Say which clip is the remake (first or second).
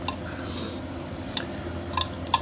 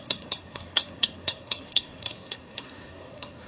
second